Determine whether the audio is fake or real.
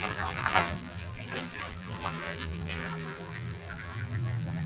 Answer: fake